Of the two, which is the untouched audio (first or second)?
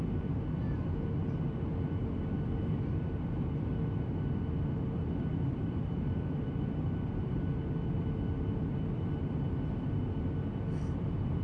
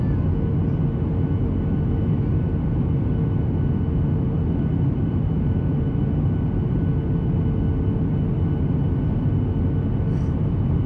second